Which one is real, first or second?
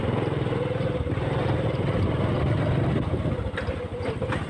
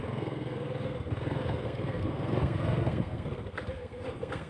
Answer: first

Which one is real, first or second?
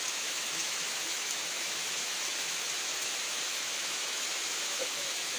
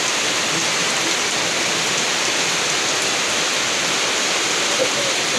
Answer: second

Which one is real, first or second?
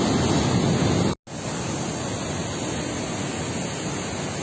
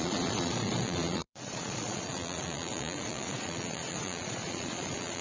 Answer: first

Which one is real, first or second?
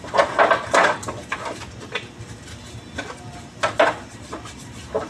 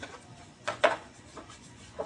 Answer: first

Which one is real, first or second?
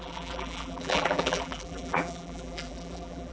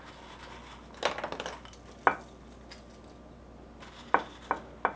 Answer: second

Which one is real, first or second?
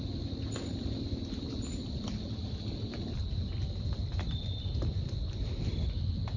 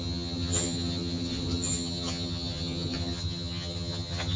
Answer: first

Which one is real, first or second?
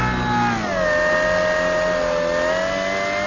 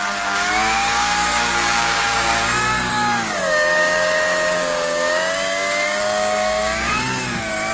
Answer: first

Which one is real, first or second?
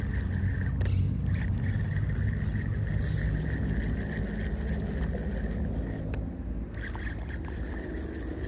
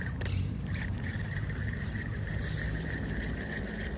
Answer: first